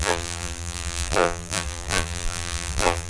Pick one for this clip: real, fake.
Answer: fake